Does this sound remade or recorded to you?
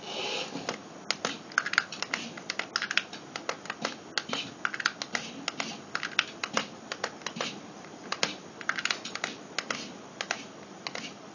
recorded